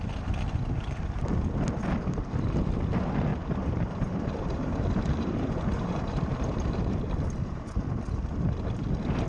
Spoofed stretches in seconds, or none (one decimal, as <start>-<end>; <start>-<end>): 3.3-6.9